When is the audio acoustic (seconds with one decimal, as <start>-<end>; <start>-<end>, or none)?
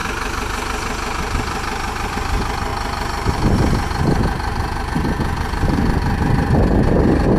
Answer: 0.0-7.4